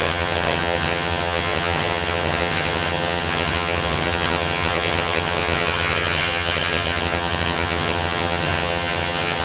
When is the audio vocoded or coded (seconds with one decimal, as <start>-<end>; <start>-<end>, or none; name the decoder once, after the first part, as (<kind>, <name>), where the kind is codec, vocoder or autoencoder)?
0.0-9.4 (vocoder, HiFi-GAN)